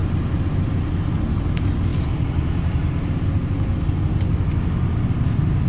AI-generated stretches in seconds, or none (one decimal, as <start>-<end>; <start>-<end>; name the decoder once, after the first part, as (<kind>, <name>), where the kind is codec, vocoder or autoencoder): none

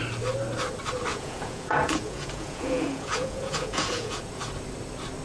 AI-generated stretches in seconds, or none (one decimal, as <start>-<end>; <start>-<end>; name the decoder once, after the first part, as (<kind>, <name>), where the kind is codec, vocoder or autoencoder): 1.1-4.2 (vocoder, Vocos)

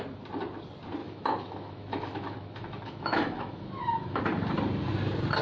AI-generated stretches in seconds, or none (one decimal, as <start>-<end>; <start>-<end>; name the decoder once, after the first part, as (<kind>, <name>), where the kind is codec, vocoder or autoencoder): 1.0-4.2 (autoencoder, DAC-VAE)

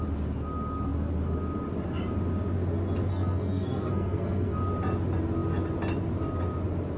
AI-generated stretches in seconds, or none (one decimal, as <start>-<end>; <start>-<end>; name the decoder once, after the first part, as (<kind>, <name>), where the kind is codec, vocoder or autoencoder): 3.1-4.6 (codec, SNAC)